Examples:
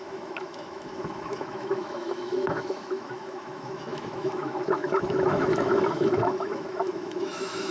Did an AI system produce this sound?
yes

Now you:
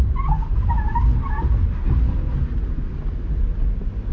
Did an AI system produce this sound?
no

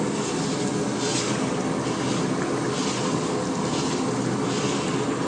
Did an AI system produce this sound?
no